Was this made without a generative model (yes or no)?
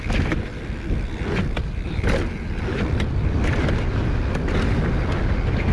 no